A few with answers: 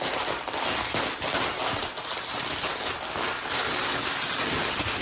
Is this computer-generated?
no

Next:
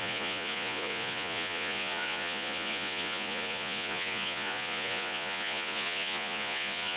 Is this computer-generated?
yes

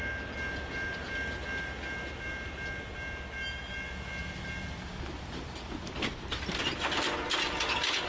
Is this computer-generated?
no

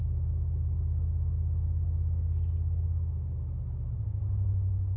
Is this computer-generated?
no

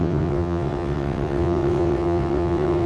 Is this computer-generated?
yes